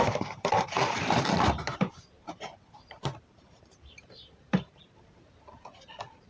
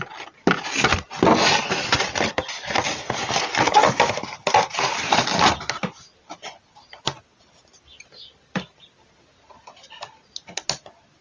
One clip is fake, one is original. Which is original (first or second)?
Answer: second